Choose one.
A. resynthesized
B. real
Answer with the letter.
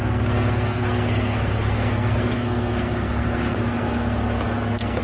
A